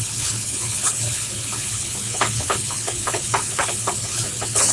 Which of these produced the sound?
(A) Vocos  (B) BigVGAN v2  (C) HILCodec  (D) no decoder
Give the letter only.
C